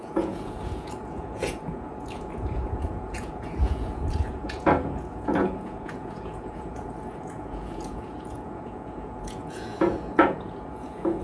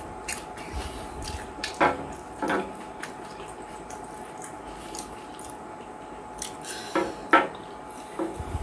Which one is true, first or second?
second